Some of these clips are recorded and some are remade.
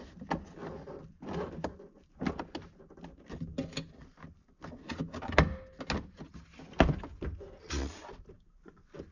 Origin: recorded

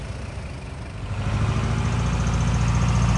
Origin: recorded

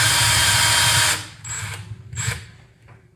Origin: recorded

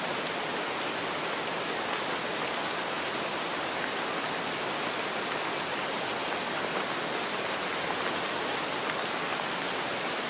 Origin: recorded